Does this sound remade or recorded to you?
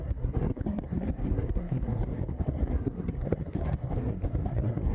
remade